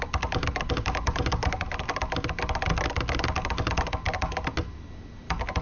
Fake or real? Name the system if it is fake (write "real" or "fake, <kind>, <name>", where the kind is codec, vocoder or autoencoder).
real